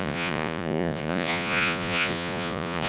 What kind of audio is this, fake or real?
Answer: fake